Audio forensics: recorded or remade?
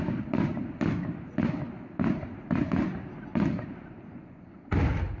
recorded